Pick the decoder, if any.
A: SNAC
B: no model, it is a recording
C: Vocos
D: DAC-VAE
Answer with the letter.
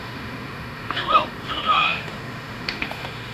D